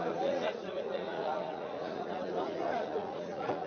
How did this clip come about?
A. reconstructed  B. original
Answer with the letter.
A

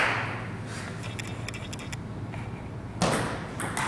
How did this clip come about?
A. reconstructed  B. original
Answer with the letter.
B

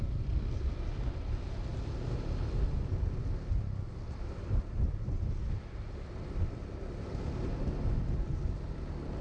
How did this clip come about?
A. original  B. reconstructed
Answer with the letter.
A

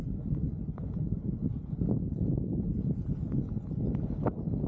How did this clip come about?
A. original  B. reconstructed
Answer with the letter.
A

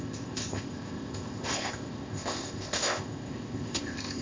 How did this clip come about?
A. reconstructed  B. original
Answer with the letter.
A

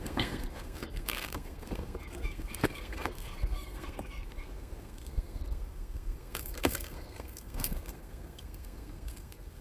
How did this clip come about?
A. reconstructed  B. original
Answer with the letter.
A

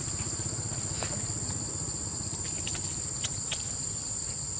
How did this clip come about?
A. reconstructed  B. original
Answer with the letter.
A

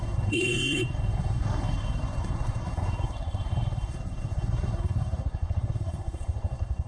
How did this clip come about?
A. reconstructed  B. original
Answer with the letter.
A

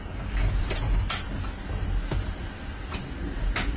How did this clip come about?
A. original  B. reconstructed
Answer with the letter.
A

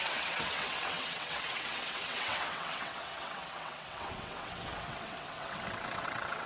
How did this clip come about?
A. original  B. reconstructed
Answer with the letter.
B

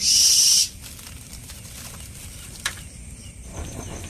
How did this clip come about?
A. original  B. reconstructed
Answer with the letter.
A